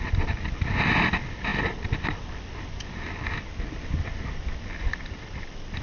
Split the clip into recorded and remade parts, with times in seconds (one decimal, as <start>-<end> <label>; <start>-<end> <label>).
0.0-5.8 recorded